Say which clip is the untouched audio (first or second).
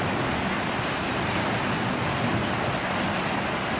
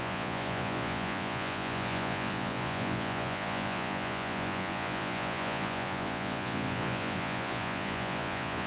first